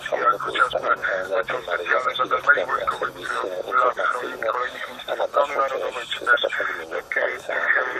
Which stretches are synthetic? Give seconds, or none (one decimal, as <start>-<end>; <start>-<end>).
0.0-5.3; 7.0-8.0